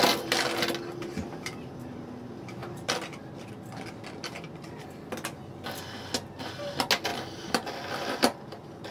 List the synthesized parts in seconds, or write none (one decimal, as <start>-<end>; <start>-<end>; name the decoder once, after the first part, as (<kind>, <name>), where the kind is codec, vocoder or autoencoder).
2.6-3.5 (vocoder, BigVGAN v2); 7.1-7.7